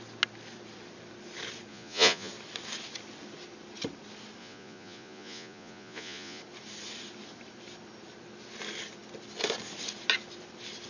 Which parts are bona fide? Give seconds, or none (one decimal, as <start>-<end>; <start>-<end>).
0.0-1.7; 2.3-4.4; 6.4-10.9